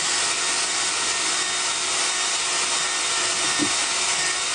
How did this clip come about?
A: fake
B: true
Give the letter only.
B